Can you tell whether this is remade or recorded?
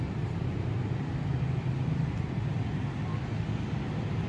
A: recorded